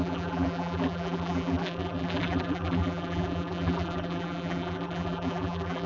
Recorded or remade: remade